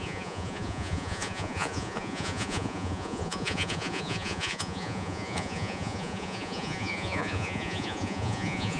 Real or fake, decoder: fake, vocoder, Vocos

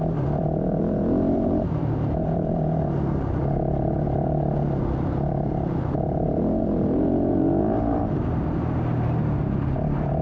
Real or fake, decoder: fake, vocoder, BigVGAN v2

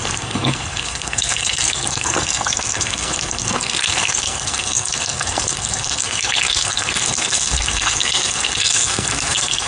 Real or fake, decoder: fake, codec, SNAC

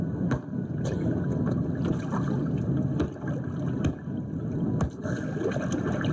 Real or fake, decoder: real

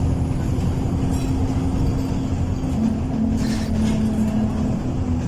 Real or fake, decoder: real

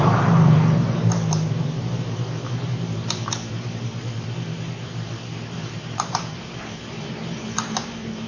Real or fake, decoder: fake, vocoder, BigVGAN v2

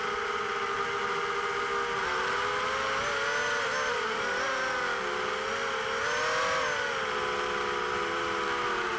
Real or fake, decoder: real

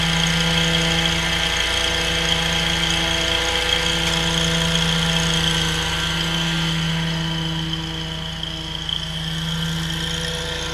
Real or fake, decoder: real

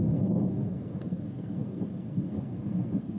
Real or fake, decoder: fake, codec, SNAC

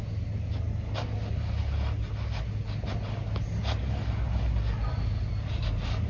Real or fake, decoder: real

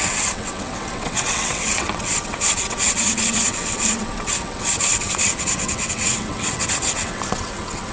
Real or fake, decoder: fake, vocoder, WaveNeXt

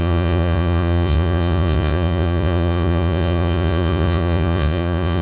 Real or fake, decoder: fake, vocoder, Vocos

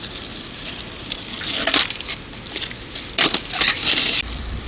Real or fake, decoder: real